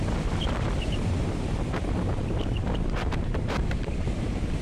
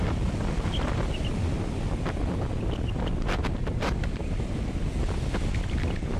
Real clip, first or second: second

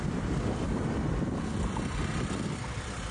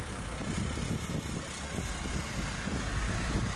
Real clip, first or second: second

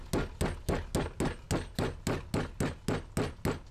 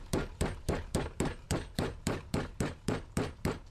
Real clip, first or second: first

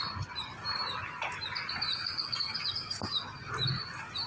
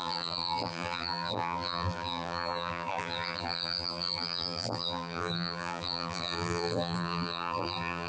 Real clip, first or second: first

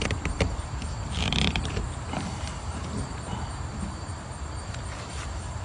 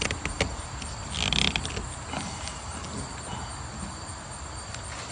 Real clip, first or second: second